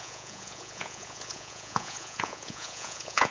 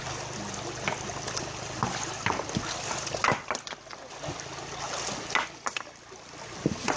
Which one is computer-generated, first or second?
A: first